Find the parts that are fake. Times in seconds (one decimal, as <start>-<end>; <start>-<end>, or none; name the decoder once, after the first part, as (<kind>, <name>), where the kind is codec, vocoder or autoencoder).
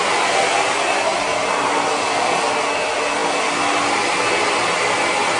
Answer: none